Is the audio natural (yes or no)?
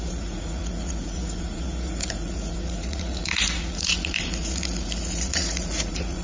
no